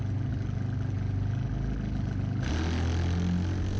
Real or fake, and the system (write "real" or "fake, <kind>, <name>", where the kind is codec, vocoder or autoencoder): real